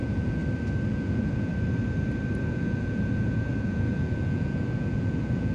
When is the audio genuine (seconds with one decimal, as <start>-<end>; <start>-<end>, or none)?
0.4-0.9; 1.5-2.4